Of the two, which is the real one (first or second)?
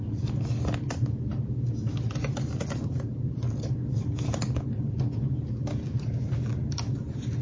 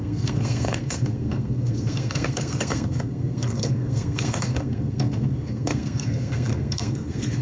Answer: first